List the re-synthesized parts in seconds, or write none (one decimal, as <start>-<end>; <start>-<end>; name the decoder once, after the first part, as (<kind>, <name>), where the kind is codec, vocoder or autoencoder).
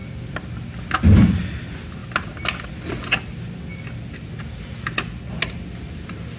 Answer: none